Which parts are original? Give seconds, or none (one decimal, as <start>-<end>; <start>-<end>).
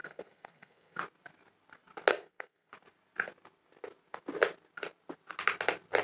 1.0-2.1; 2.7-6.0